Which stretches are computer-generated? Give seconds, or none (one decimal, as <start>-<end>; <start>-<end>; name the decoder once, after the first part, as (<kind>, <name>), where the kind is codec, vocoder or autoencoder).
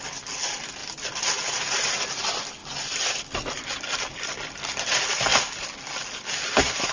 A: 0.8-1.6 (vocoder, BigVGAN v2); 2.6-4.6